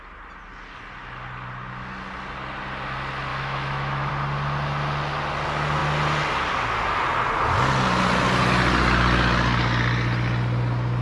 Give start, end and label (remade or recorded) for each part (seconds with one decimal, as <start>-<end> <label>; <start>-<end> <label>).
0.0-3.3 recorded; 3.3-4.1 remade; 4.1-11.0 recorded